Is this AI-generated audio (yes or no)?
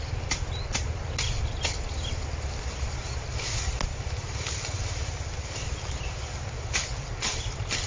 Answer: no